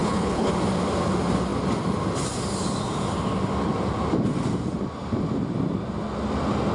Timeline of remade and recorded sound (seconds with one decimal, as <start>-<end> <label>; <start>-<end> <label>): 0.0-0.5 remade; 0.5-6.7 recorded